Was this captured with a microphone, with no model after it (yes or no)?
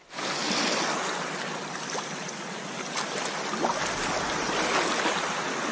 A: yes